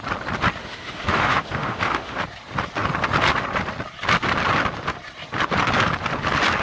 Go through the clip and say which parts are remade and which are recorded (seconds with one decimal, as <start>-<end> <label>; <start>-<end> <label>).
0.0-0.6 recorded; 0.6-2.2 remade; 2.2-6.6 recorded